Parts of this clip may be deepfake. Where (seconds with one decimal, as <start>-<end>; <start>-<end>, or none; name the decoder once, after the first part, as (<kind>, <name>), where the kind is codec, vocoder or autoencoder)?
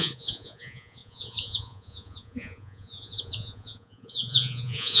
0.0-5.0 (vocoder, Vocos)